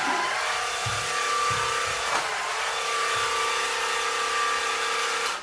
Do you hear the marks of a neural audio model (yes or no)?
no